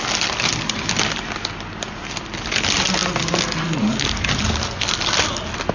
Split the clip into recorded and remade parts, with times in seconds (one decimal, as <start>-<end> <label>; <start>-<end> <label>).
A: 0.0-5.7 recorded